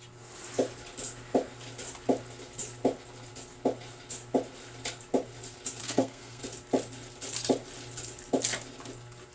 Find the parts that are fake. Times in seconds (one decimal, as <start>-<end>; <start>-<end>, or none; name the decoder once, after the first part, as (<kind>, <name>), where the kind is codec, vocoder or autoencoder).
5.8-6.4 (codec, SNAC)